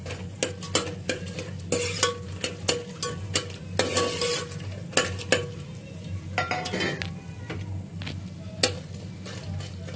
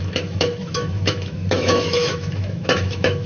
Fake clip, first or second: second